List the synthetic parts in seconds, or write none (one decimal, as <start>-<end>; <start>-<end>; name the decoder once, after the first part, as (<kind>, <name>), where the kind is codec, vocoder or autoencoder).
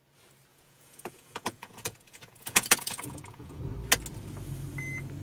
0.5-3.6 (vocoder, Vocos)